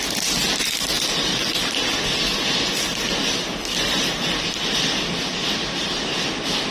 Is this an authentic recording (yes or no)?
yes